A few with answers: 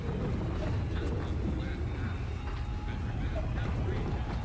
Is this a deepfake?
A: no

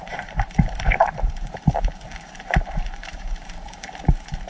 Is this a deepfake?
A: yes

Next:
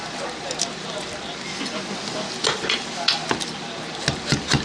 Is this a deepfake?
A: no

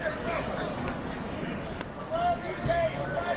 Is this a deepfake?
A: yes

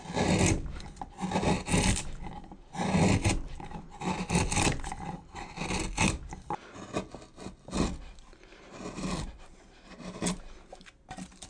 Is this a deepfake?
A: no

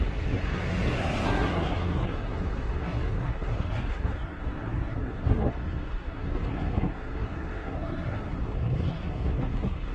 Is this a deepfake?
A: yes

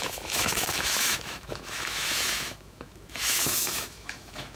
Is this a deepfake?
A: yes